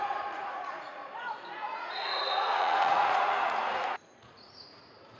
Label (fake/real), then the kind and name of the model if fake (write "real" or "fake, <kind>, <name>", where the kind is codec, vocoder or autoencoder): fake, vocoder, Vocos